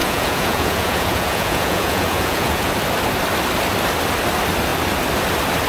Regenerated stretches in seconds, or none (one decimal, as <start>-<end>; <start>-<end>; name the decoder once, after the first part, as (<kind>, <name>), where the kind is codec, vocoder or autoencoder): 0.0-2.7 (vocoder, Vocos)